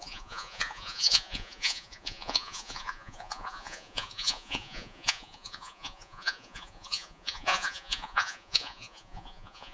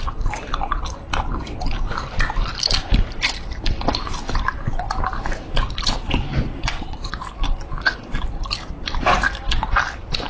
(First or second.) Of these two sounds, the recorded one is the second